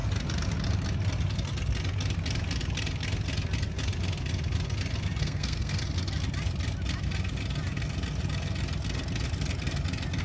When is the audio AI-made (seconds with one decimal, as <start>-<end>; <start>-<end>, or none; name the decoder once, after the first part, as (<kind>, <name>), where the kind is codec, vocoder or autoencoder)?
5.2-5.8 (codec, SNAC)